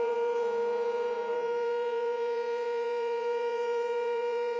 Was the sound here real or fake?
fake